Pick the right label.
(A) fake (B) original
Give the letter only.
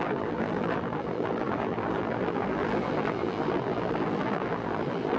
A